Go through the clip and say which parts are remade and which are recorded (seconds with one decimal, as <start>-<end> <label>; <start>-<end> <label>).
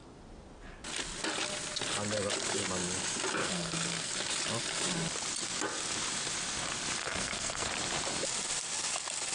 0.0-3.4 recorded; 3.4-4.1 remade; 4.1-7.0 recorded; 7.0-7.7 remade; 7.7-9.3 recorded